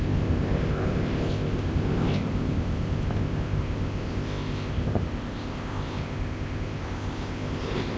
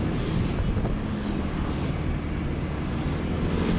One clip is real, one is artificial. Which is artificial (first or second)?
first